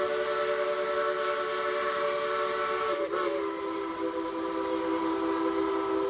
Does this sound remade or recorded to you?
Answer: recorded